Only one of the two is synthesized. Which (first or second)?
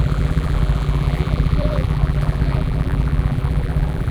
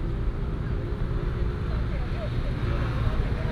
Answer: first